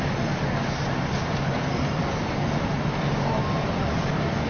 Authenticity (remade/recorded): recorded